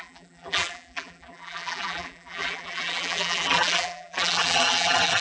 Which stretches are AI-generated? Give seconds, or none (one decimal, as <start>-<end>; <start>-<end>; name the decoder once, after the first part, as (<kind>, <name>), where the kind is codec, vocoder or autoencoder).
0.0-5.2 (vocoder, BigVGAN v2)